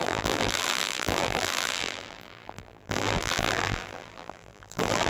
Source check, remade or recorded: remade